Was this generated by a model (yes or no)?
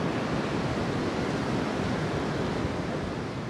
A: no